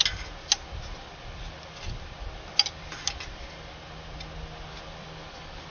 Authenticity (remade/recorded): recorded